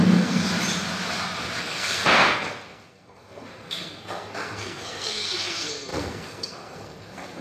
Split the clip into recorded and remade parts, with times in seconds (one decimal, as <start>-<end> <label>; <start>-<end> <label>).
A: 0.0-0.4 remade; 0.4-1.6 recorded; 1.6-7.4 remade